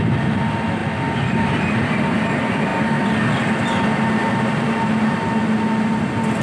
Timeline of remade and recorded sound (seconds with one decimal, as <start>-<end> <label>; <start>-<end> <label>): 0.0-6.4 recorded